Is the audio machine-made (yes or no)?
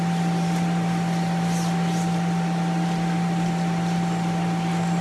no